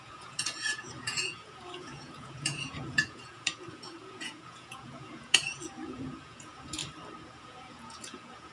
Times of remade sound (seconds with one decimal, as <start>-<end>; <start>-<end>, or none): 0.0-6.8; 7.4-8.5